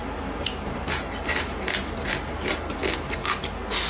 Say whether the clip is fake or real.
real